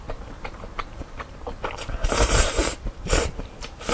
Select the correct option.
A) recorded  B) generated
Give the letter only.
B